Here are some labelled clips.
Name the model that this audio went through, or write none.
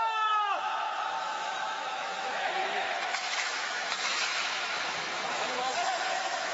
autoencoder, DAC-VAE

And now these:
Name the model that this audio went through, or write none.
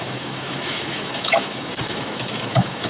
autoencoder, DAC-VAE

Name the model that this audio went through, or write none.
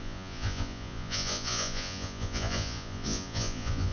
vocoder, Vocos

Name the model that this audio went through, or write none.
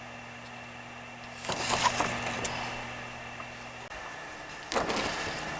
none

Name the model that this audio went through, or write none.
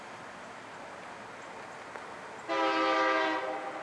none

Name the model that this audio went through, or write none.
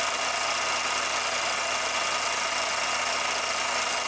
none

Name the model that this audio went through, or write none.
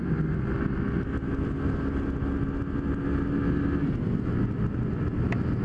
none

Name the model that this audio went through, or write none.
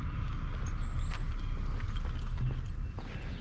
none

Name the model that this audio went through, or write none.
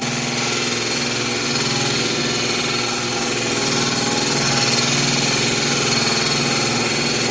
none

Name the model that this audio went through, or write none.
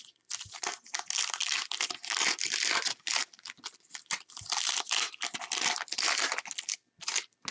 none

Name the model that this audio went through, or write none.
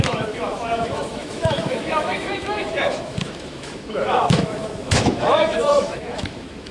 autoencoder, DAC-VAE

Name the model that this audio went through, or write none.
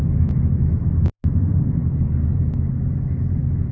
none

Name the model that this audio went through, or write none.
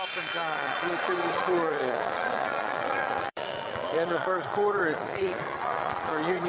vocoder, Vocos